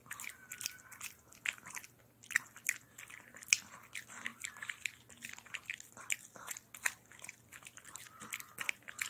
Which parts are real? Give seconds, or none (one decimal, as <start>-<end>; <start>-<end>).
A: 0.0-9.1